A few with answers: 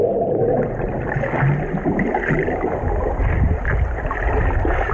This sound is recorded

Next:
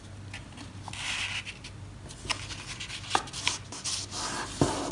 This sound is recorded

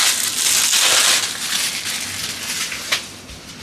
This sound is recorded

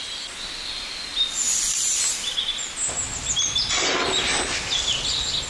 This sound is recorded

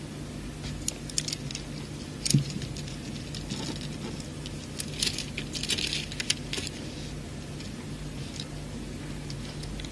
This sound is recorded